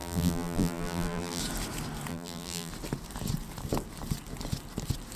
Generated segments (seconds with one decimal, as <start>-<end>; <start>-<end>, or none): 0.0-1.4; 2.1-2.7